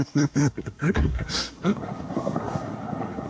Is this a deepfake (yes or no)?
yes